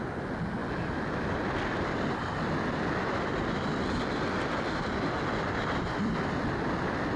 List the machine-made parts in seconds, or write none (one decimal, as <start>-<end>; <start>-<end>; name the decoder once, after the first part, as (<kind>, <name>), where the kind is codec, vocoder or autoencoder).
none